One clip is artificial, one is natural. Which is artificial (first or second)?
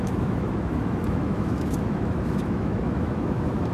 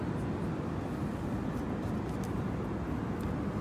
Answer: first